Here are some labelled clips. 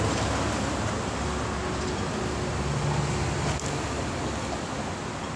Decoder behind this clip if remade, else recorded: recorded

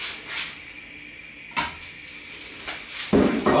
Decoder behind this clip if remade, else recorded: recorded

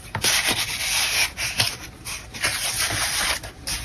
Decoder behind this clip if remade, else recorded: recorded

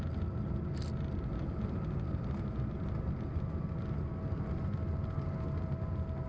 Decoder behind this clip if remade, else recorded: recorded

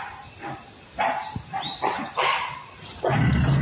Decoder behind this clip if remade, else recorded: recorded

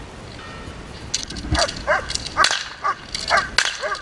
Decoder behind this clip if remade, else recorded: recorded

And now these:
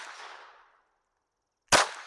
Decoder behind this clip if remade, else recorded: recorded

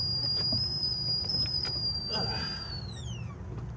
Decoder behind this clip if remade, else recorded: recorded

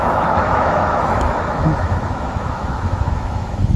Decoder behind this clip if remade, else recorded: remade, autoencoder, DAC-VAE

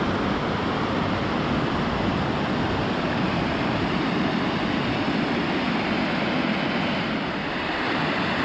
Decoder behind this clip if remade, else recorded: recorded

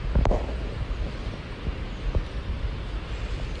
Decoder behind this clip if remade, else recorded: recorded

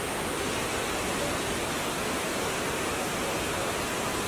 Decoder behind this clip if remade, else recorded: recorded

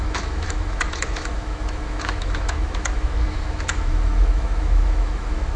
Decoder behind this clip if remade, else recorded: remade, autoencoder, DAC-VAE